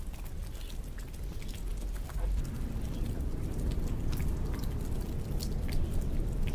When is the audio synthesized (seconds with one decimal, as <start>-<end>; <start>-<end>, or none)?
none